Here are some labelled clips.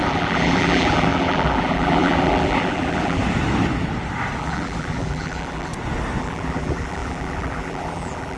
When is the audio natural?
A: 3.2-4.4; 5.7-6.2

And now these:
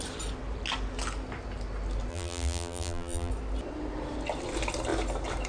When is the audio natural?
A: 0.0-2.1; 3.3-5.5

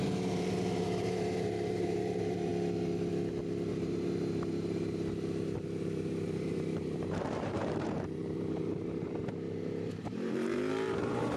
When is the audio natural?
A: 2.5-3.7

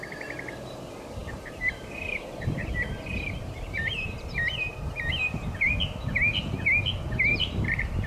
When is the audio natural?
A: 0.0-1.2; 5.7-7.3

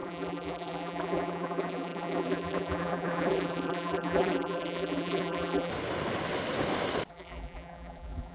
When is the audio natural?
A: 5.7-7.1

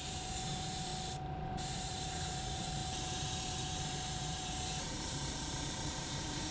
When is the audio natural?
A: 0.9-1.4